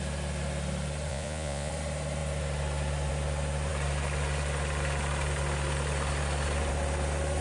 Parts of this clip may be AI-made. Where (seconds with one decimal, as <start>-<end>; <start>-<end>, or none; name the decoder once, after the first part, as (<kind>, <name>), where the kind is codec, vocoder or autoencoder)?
1.1-1.7 (vocoder, Vocos)